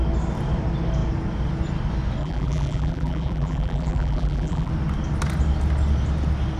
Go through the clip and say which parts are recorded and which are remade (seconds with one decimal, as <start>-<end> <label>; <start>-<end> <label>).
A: 0.0-2.2 recorded; 2.2-4.7 remade; 4.7-6.6 recorded